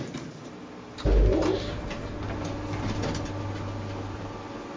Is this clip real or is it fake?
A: real